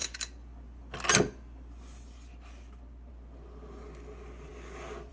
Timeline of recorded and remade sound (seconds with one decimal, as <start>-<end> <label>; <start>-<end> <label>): 0.0-5.1 recorded